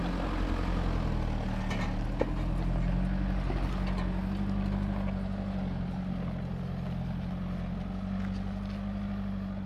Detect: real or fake real